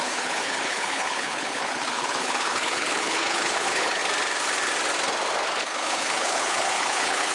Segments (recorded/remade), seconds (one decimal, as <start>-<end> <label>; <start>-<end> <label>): 0.0-4.0 remade; 4.0-5.6 recorded; 5.6-7.3 remade